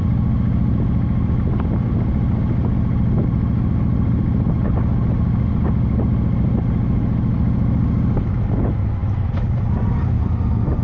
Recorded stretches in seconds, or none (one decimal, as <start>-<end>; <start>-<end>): 0.0-10.8